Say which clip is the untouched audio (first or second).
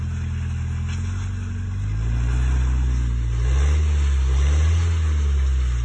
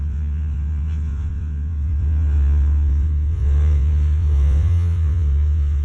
first